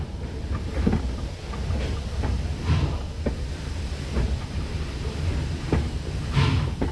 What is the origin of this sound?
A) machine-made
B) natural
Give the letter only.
B